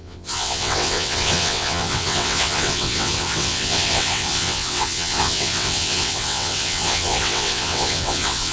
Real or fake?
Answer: fake